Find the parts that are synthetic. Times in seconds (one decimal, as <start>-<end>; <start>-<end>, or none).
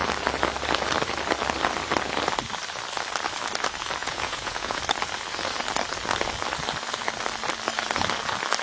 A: 4.0-4.8